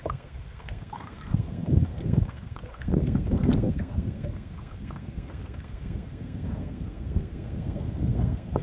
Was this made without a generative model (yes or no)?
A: no